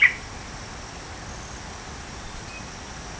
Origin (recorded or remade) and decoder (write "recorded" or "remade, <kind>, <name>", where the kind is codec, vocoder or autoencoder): recorded